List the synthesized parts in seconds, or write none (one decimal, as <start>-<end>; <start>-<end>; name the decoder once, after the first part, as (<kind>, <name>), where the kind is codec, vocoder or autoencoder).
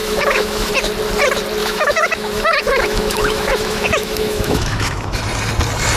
0.0-0.7 (autoencoder, DAC-VAE); 1.6-5.2